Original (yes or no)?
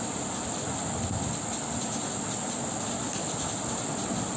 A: yes